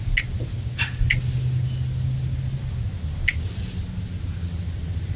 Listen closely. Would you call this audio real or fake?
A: real